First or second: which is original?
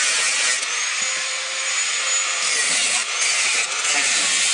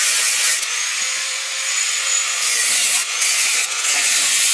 first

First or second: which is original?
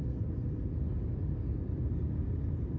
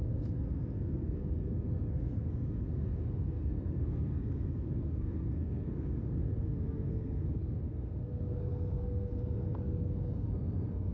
first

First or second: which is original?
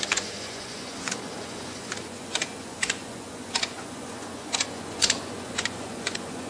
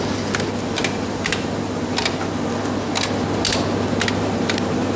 second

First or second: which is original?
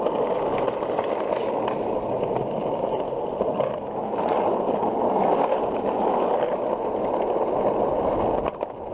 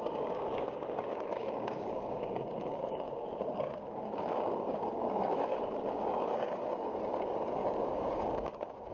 first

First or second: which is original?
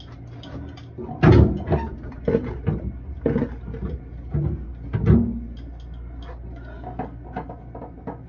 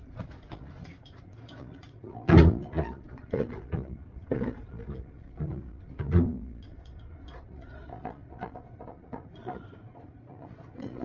first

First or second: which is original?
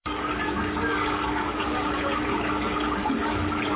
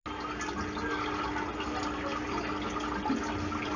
second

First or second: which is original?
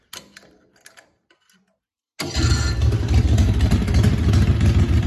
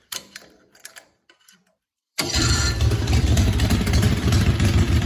first